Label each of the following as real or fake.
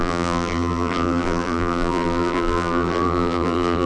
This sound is fake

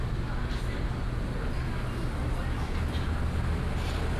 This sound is real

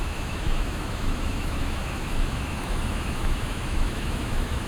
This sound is fake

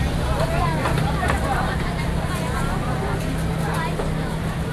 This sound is real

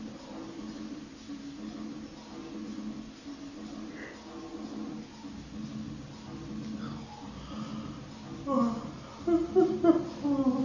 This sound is real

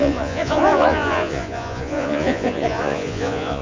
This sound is fake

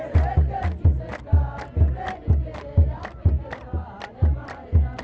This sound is real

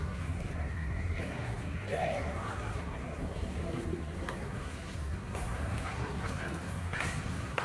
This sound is fake